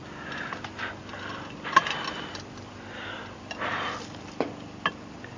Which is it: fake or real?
real